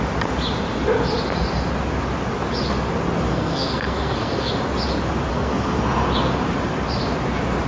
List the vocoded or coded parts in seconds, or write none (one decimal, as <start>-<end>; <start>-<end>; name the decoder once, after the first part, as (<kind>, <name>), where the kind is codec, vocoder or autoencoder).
3.3-4.5 (codec, SNAC); 5.3-5.8